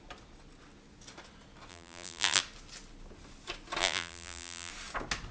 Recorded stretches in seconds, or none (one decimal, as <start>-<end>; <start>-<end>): 0.0-1.7; 2.4-3.8; 4.7-5.3